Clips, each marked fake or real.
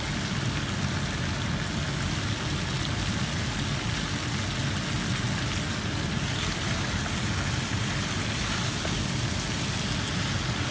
real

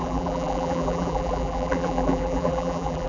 fake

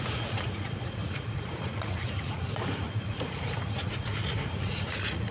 fake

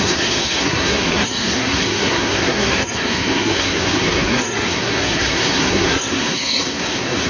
fake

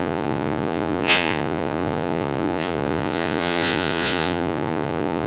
fake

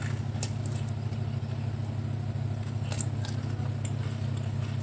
real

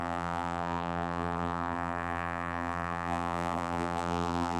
fake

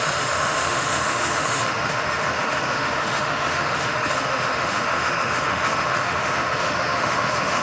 fake